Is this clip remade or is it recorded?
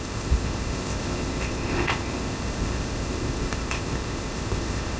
remade